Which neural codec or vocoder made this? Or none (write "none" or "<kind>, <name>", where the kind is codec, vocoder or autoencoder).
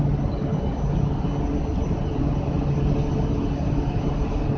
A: none